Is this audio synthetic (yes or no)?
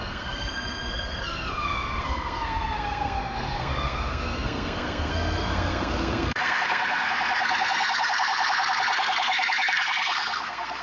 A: yes